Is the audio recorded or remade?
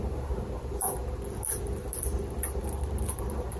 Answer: recorded